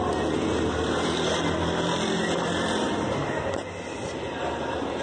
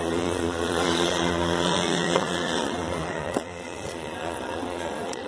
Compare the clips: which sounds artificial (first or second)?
second